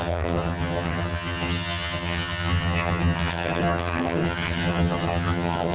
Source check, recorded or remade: remade